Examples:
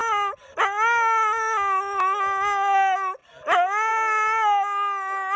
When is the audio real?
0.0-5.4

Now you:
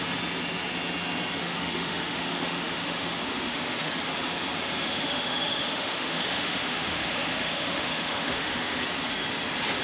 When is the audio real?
0.0-1.4; 3.9-4.8; 8.8-9.8

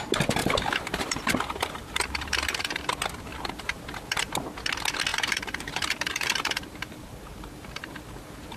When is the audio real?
0.0-0.4; 2.8-3.3; 4.3-5.1

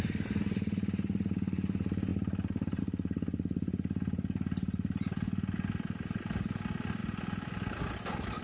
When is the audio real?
0.0-8.4